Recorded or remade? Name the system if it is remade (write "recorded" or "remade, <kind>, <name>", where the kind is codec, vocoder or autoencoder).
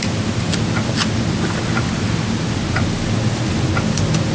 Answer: recorded